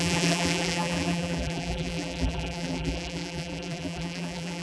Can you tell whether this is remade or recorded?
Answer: remade